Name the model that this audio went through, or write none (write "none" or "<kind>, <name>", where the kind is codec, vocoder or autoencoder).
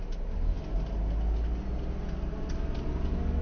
none